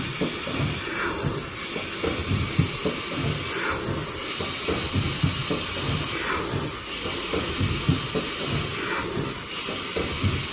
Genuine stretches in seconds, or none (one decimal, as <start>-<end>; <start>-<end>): 0.0-10.5